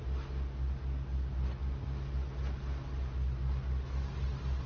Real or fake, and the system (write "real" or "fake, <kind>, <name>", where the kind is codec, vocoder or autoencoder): real